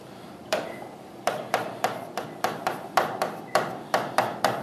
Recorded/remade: remade